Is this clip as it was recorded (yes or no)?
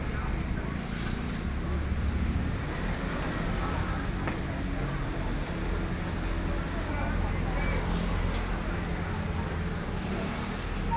yes